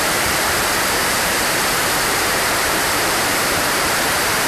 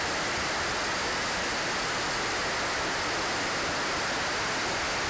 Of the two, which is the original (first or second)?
second